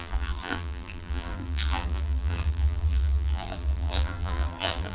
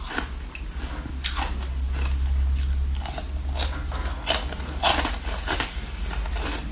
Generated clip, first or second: first